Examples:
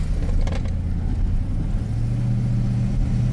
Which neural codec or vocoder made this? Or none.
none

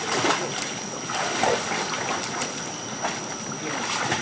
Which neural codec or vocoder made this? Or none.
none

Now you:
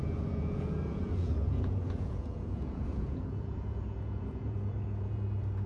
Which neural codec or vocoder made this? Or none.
vocoder, Vocos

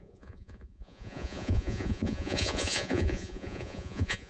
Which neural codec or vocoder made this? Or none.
vocoder, Vocos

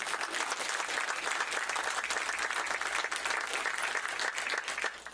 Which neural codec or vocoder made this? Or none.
none